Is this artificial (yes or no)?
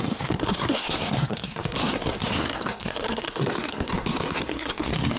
yes